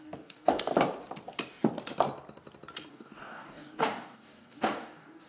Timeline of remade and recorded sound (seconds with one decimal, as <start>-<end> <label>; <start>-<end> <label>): 0.0-0.7 remade; 0.7-2.9 recorded; 2.9-5.3 remade